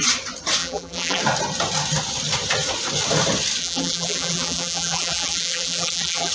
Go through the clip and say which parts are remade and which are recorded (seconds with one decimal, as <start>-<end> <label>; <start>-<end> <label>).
0.0-0.6 recorded; 0.6-1.2 remade; 1.2-3.6 recorded; 3.6-6.3 remade